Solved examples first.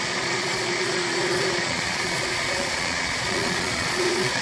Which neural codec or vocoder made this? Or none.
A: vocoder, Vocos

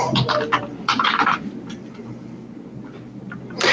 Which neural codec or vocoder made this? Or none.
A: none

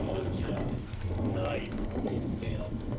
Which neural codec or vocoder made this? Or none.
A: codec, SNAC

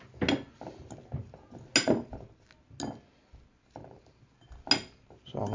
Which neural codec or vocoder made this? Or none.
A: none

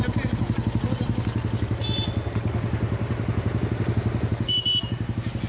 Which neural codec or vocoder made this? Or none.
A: none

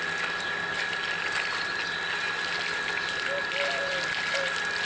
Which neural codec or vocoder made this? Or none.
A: none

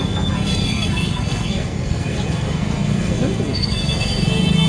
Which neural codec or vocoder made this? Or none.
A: codec, SNAC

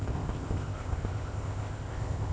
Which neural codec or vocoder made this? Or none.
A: codec, ZipCodec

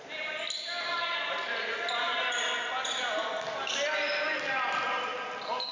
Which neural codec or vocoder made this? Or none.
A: none